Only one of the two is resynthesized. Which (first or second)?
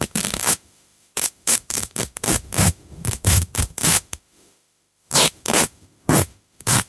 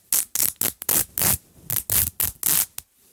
first